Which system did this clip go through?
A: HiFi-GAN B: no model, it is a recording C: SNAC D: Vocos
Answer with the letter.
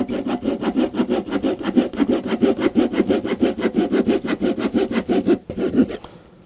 B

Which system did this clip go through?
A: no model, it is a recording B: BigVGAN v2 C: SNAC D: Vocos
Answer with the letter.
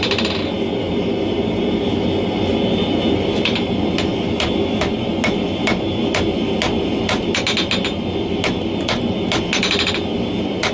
A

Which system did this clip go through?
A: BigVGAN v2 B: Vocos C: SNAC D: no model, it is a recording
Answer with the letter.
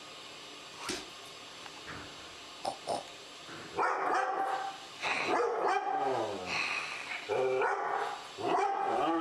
D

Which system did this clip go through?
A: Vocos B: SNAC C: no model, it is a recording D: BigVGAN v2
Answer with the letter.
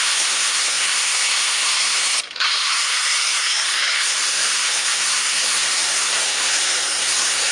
B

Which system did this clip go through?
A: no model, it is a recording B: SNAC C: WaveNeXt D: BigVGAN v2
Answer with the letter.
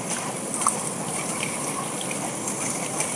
A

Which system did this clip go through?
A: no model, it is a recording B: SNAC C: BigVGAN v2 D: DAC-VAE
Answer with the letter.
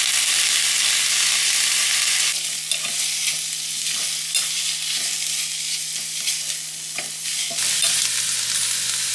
A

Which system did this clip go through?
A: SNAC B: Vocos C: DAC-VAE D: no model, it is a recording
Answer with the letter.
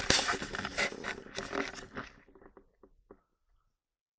D